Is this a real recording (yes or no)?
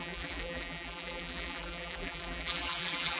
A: no